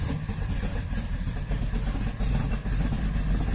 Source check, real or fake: real